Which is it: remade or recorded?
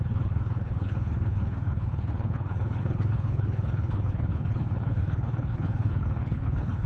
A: remade